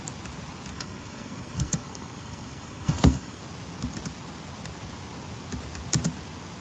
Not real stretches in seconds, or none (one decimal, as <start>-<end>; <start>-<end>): 0.7-3.4